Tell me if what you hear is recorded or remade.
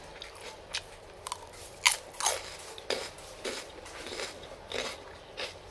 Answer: recorded